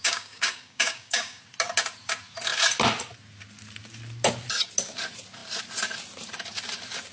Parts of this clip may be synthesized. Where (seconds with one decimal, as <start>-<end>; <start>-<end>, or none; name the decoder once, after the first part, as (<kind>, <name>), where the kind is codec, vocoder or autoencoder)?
0.0-1.4 (codec, DAC)